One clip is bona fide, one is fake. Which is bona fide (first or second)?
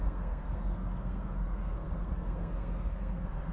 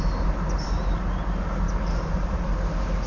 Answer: second